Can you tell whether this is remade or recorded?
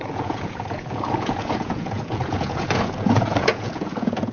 remade